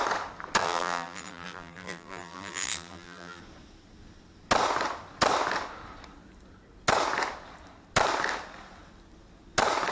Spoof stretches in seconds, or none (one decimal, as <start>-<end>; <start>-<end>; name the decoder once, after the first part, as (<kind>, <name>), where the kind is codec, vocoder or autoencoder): 0.6-3.4 (vocoder, BigVGAN v2)